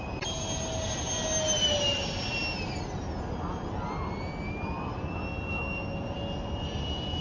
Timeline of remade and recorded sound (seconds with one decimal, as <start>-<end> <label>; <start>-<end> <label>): 0.0-7.2 recorded